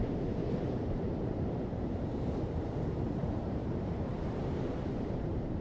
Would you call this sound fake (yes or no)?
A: yes